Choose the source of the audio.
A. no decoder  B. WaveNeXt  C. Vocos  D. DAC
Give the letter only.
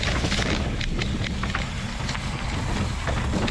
A